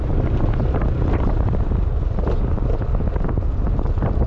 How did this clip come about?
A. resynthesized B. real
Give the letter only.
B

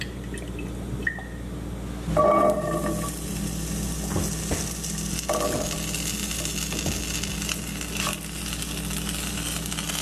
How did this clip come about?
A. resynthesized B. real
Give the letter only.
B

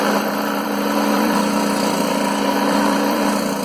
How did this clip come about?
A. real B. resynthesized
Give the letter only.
B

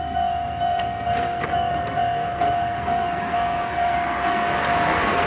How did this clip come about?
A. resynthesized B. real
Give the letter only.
A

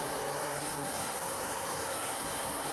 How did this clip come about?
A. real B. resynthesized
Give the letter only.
B